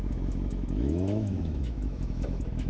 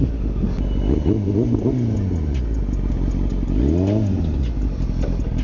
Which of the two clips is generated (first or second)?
first